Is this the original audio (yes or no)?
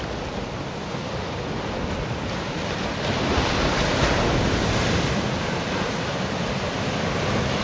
yes